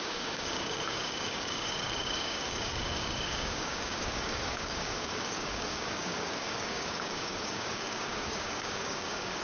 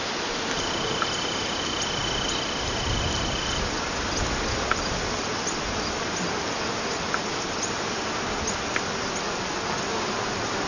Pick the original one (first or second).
second